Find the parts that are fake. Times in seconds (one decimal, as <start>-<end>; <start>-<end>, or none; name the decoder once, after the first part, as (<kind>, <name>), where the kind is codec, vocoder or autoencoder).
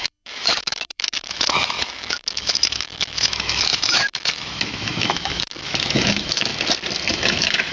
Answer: 0.0-6.5 (autoencoder, DAC-VAE); 7.1-7.7